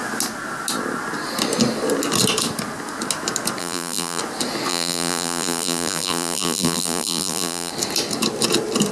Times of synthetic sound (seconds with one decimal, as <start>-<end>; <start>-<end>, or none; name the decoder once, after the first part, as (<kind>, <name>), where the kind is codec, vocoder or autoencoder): 3.6-4.2 (vocoder, BigVGAN v2); 4.7-7.7